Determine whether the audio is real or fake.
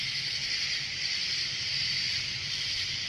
fake